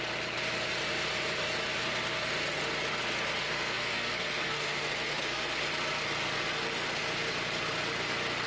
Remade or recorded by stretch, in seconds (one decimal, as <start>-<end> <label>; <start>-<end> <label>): 0.0-3.5 recorded; 3.5-5.6 remade; 5.6-8.5 recorded